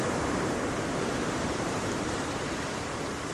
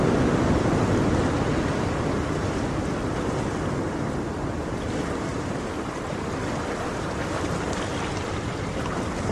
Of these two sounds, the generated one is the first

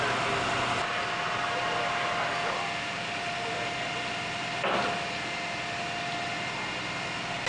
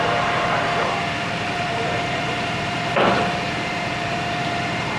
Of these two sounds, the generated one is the second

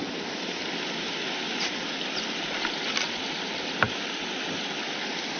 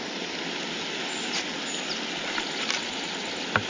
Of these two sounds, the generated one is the first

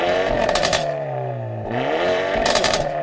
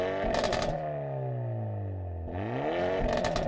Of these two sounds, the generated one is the first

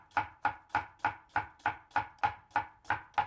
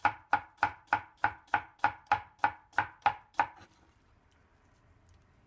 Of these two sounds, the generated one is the second